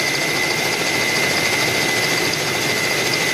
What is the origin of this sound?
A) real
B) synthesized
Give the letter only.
A